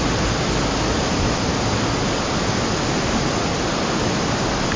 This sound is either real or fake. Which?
real